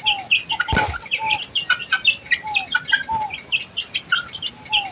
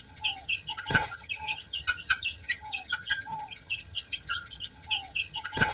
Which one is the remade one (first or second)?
second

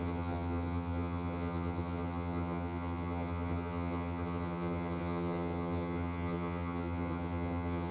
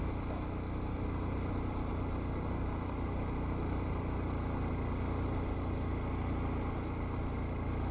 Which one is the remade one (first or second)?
first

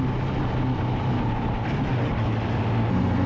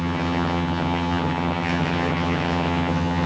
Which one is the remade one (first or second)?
second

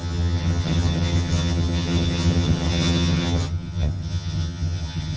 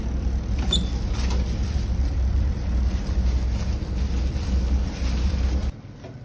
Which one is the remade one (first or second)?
first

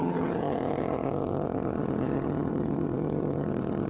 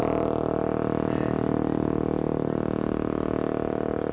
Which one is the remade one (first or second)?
first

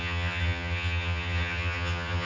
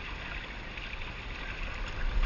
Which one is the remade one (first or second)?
first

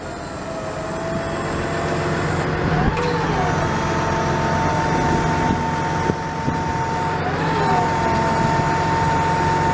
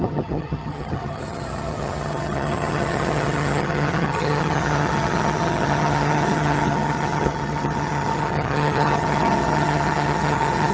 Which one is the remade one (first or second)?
second